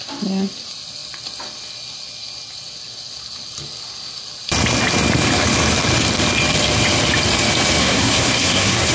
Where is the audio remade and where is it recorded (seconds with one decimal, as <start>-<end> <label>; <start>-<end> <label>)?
0.0-7.8 recorded; 7.8-8.9 remade